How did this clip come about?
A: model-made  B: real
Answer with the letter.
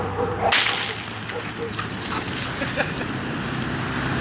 B